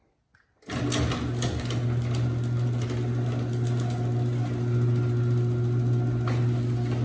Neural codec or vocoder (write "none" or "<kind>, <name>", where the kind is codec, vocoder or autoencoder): none